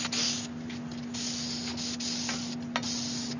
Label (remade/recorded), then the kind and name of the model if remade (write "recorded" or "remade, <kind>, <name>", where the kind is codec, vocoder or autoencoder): recorded